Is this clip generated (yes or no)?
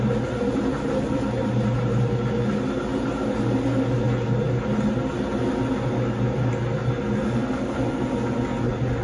no